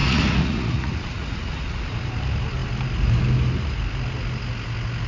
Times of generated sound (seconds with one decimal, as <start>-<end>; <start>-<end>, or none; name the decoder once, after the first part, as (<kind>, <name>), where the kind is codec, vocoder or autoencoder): 0.0-1.8 (vocoder, Vocos)